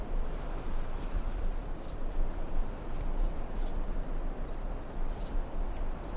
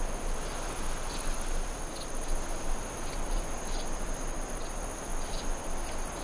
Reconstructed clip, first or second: first